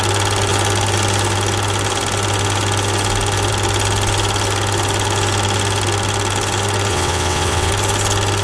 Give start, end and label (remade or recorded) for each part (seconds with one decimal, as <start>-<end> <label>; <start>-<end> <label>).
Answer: 0.0-6.9 recorded; 6.9-7.7 remade; 7.7-8.4 recorded

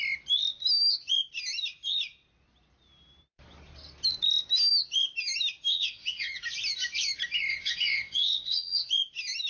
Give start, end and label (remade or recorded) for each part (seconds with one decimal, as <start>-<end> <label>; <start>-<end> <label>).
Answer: 0.0-5.7 recorded; 5.7-6.4 remade; 6.4-7.5 recorded; 7.5-8.9 remade; 8.9-9.5 recorded